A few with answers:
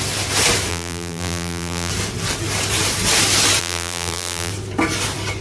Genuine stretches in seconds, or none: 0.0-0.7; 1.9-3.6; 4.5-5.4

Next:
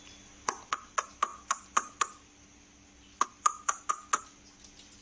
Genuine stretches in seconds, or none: 0.0-5.0

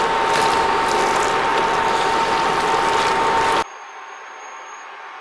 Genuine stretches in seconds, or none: 0.0-5.2

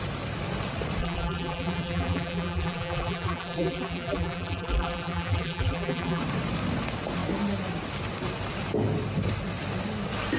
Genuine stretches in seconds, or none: 0.0-1.0; 6.2-10.4

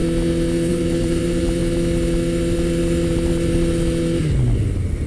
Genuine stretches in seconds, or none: 0.0-0.7; 1.6-5.1